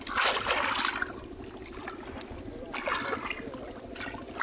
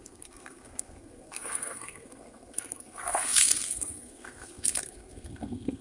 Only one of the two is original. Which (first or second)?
first